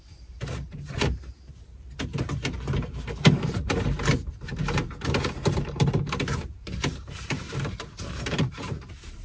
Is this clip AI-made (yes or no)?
yes